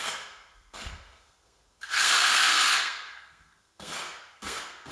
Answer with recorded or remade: remade